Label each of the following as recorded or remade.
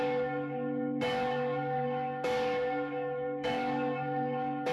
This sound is remade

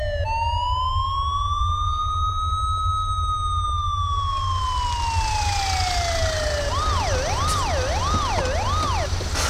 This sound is recorded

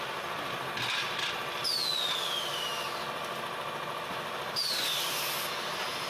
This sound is recorded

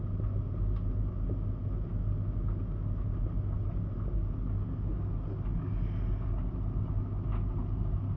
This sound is recorded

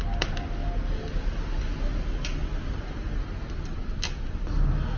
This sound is recorded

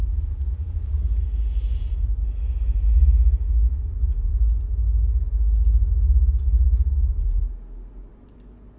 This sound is recorded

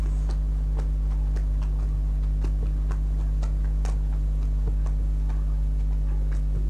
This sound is recorded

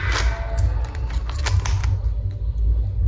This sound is recorded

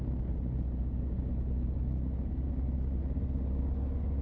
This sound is recorded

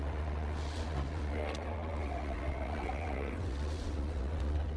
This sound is remade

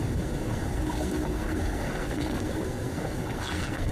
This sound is remade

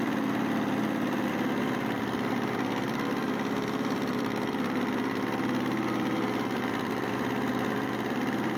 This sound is remade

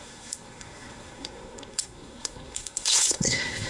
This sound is remade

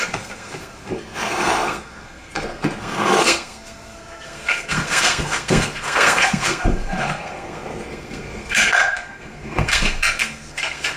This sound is remade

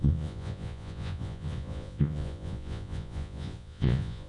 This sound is remade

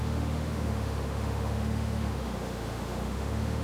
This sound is remade